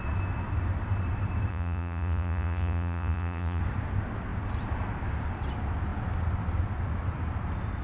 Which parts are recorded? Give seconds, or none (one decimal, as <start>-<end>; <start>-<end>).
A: 0.0-1.5; 3.6-7.8